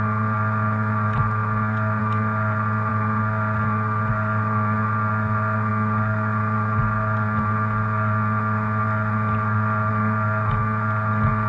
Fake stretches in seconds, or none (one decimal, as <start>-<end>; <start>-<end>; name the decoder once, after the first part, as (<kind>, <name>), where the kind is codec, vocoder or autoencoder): none